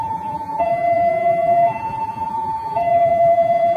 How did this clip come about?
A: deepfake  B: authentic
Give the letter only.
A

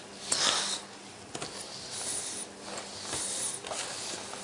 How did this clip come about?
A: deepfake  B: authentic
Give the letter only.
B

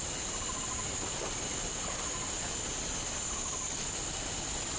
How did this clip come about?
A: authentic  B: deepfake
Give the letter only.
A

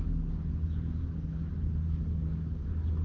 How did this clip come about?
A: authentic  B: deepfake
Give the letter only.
A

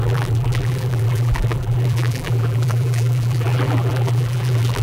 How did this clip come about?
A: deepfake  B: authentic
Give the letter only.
A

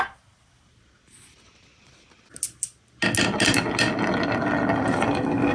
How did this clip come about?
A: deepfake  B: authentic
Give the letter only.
B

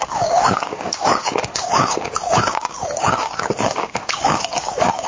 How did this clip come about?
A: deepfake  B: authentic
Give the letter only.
A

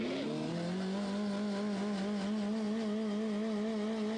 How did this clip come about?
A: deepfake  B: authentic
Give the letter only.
B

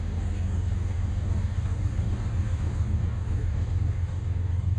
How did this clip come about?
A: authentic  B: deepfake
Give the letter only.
B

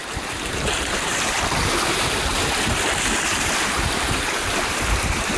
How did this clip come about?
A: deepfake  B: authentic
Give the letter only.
A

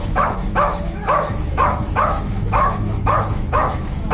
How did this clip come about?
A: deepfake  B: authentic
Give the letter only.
A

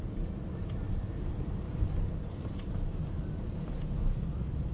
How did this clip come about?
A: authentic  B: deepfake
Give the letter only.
A